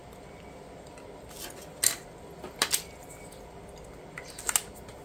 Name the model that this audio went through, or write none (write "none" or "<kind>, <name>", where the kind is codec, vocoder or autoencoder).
none